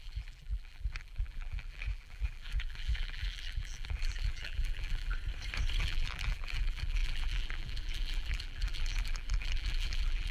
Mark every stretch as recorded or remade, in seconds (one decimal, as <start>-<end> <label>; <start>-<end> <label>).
0.0-5.1 remade; 5.1-5.8 recorded; 5.8-10.3 remade